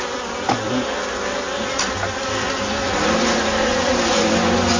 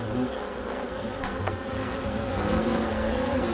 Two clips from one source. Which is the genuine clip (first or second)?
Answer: first